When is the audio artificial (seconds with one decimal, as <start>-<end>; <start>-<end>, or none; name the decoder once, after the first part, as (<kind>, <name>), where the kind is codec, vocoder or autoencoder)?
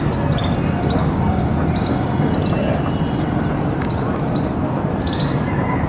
1.0-1.5 (codec, DAC)